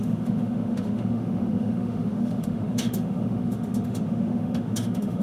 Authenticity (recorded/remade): remade